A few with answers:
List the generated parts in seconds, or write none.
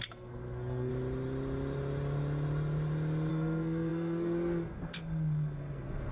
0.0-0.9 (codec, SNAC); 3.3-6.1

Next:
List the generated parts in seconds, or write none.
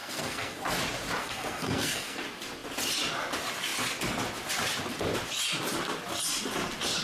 0.0-0.6 (codec, SNAC); 1.2-2.2